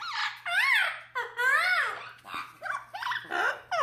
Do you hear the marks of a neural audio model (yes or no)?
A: no